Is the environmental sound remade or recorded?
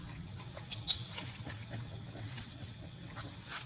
remade